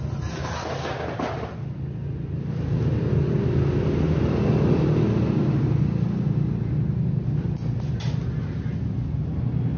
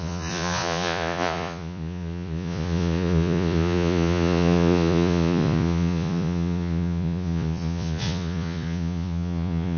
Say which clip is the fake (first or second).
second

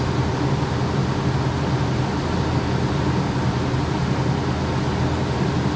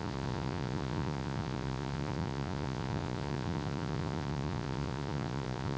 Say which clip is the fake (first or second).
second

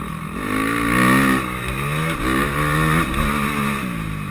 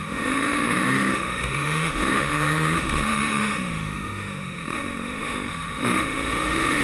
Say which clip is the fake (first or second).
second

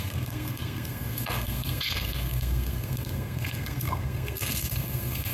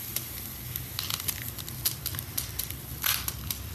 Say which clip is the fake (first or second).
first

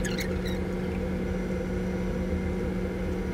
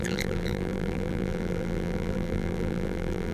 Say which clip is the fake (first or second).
second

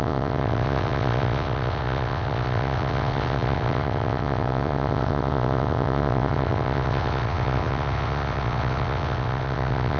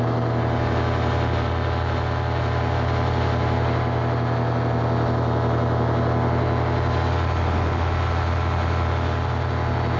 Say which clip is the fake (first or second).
first